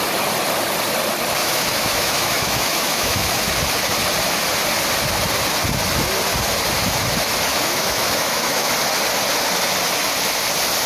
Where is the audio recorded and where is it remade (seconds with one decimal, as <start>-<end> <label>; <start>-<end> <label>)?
0.0-1.4 recorded; 1.4-3.5 remade; 3.5-7.5 recorded; 7.5-8.7 remade; 8.7-10.9 recorded